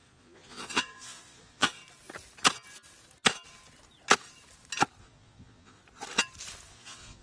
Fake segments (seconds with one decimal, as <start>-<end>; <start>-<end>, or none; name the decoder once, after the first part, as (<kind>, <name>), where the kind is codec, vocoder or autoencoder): 0.0-1.8 (vocoder, Vocos); 5.0-5.8; 6.7-7.2